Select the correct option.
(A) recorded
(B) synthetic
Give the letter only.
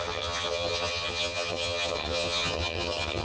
B